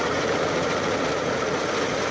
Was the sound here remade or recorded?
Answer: remade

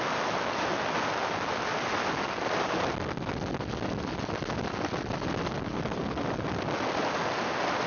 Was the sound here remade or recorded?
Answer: recorded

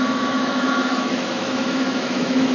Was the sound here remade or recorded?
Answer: remade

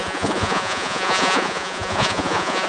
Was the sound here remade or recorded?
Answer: remade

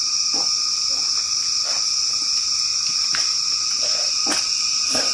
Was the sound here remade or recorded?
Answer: recorded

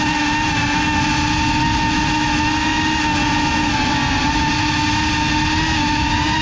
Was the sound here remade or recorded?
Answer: recorded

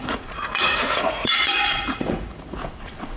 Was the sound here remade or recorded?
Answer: remade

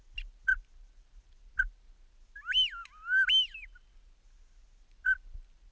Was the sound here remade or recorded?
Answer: recorded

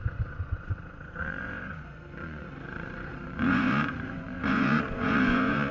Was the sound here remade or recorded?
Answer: remade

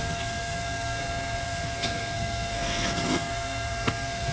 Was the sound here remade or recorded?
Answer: remade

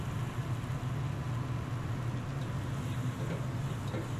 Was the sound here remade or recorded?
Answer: recorded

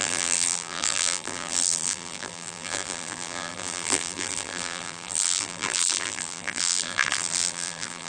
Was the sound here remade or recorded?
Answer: remade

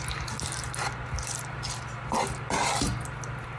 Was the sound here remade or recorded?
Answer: recorded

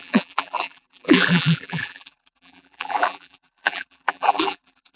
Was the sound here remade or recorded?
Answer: remade